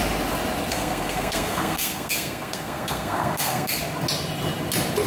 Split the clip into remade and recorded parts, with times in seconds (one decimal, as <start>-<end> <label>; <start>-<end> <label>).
0.0-0.7 recorded; 0.7-3.8 remade; 3.8-5.1 recorded